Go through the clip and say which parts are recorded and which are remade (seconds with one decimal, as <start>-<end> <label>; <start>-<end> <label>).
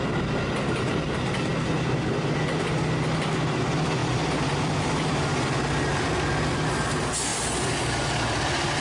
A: 0.0-8.8 recorded